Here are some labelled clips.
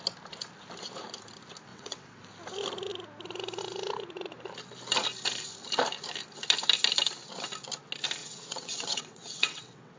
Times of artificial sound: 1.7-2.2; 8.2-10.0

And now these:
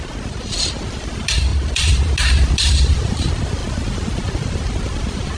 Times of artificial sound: none

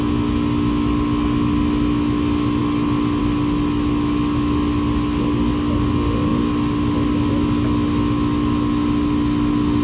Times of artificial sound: none